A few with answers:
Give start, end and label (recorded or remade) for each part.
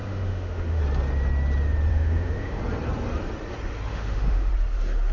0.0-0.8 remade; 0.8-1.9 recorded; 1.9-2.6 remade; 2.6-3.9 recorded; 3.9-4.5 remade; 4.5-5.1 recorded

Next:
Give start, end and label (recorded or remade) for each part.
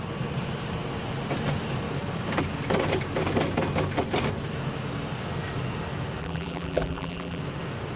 0.0-6.2 recorded; 6.2-7.4 remade; 7.4-8.0 recorded